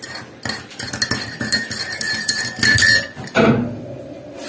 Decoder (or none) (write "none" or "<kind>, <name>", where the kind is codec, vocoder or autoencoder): none